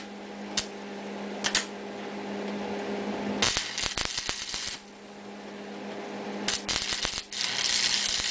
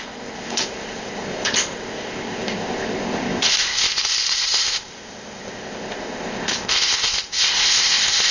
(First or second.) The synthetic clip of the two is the second